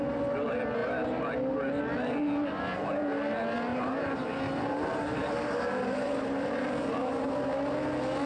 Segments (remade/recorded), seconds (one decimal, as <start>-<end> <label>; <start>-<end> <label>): 0.0-3.7 recorded; 3.7-7.4 remade; 7.4-8.3 recorded